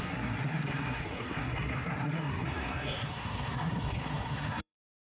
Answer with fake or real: fake